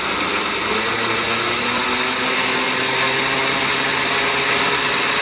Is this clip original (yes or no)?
yes